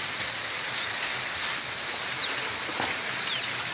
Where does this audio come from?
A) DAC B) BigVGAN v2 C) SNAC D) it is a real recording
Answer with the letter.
D